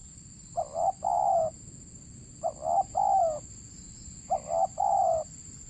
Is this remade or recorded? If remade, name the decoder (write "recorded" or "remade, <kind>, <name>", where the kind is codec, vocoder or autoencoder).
recorded